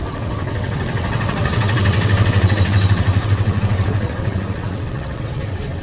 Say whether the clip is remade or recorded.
remade